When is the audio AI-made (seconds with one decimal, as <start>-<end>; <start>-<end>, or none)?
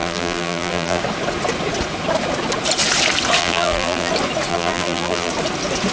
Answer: 0.0-1.0; 3.4-4.1; 4.5-5.3